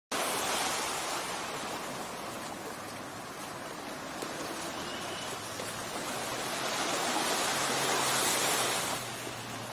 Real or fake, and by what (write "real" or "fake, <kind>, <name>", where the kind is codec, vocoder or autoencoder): real